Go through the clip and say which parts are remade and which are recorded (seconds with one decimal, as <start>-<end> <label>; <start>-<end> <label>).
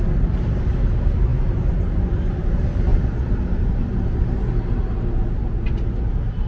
0.0-4.8 remade; 4.8-6.1 recorded; 6.1-6.5 remade